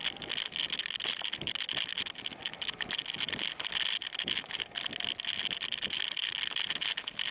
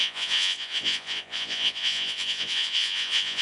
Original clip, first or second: first